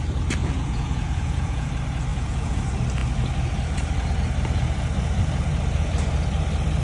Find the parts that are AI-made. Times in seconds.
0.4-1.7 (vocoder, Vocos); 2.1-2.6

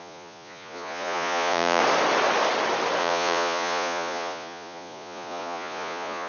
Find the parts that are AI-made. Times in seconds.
0.0-1.8 (vocoder, Vocos); 3.0-6.3

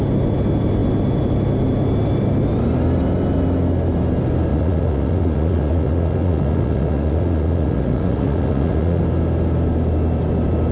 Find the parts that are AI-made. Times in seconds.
4.5-9.0 (vocoder, Vocos)

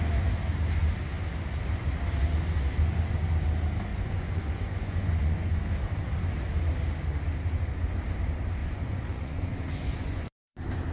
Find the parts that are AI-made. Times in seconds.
3.9-5.6 (vocoder, Vocos); 8.6-10.4

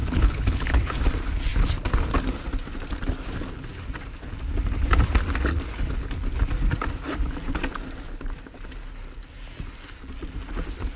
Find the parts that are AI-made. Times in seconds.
0.0-1.0 (codec, HILCodec)

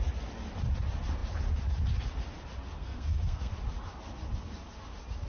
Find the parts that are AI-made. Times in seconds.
2.8-3.5 (codec, SNAC)